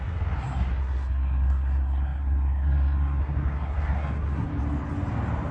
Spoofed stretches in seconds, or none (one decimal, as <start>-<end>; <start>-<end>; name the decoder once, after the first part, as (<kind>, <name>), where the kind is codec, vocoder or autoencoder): 0.0-4.5 (codec, SNAC)